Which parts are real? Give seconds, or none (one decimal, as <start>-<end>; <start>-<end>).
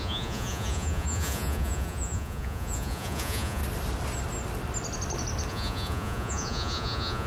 3.6-5.5